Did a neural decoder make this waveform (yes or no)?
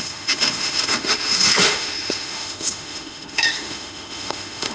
yes